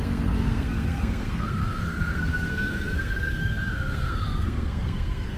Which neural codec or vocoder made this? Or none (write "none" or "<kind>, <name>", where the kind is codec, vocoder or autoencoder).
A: codec, SNAC